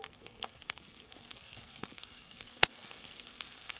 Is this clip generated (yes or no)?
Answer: yes